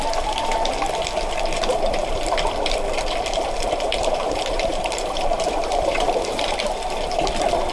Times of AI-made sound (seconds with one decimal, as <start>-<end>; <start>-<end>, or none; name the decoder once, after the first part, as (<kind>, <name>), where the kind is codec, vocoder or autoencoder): 3.9-6.6 (vocoder, BigVGAN v2)

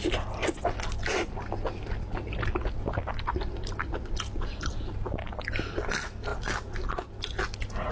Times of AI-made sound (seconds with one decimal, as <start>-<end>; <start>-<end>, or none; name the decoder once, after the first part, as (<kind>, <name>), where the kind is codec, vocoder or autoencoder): none

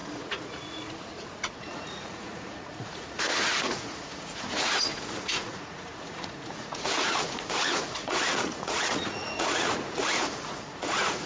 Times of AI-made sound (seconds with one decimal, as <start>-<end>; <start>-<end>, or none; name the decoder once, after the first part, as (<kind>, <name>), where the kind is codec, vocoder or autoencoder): 0.0-11.3 (vocoder, Vocos)

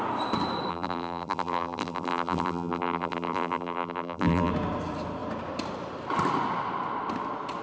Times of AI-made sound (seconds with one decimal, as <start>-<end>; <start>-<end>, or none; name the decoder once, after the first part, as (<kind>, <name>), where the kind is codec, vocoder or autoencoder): 0.7-4.5 (vocoder, BigVGAN v2)

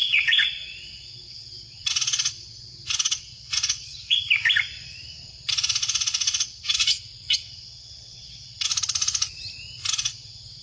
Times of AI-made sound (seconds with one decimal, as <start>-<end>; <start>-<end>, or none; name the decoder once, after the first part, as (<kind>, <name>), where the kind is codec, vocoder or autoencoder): 0.0-4.2 (vocoder, WaveNeXt); 5.3-8.7; 9.9-10.6